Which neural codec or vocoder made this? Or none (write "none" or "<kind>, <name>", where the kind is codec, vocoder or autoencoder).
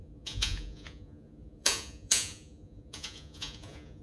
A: vocoder, Vocos